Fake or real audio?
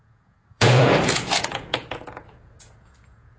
fake